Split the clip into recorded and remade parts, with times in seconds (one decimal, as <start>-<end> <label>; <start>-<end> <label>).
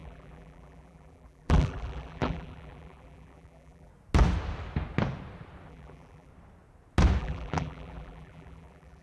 0.0-3.9 remade; 3.9-5.7 recorded; 5.7-6.3 remade; 6.3-7.2 recorded; 7.2-9.0 remade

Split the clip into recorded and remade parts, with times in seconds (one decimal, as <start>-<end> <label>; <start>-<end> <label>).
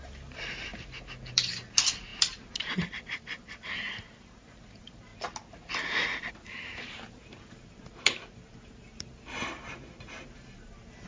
0.0-0.7 remade; 0.7-1.3 recorded; 1.3-5.1 remade; 5.1-6.3 recorded; 6.3-11.1 remade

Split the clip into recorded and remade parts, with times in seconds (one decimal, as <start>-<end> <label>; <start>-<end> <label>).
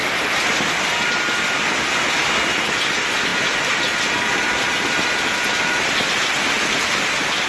0.0-7.5 recorded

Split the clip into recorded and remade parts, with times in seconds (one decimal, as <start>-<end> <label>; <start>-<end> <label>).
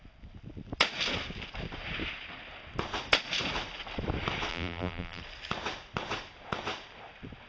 0.0-4.5 recorded; 4.5-5.2 remade; 5.2-7.5 recorded